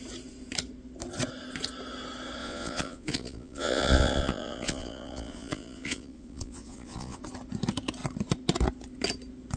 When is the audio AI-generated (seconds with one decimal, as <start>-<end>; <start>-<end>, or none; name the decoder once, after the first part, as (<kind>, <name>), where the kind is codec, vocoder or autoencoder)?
2.4-7.2 (vocoder, Vocos)